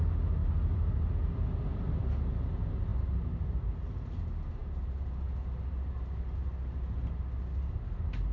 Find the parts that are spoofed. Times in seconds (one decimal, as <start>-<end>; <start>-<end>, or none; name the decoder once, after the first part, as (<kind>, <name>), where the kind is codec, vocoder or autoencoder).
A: 0.4-1.1 (vocoder, BigVGAN v2); 4.6-5.2